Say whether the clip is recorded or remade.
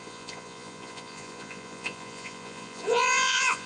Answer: remade